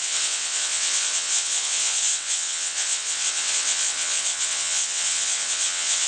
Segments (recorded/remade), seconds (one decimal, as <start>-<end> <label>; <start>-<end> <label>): 0.0-6.1 remade